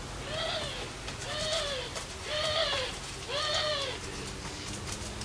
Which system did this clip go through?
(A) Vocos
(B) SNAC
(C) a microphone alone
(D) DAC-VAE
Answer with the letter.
C